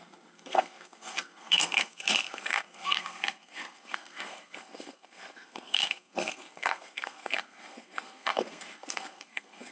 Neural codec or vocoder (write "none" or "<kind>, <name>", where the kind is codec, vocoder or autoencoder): codec, SNAC